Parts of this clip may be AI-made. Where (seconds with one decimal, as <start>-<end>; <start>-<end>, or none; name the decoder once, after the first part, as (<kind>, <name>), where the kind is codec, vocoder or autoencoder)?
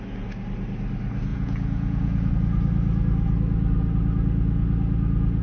1.3-2.3 (vocoder, Vocos)